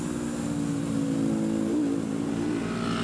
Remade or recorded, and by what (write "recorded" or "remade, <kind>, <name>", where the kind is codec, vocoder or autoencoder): recorded